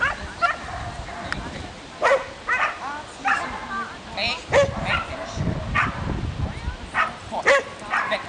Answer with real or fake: real